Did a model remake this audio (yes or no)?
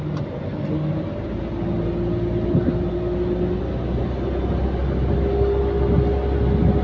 no